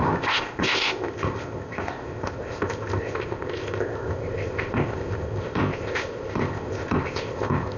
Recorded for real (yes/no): no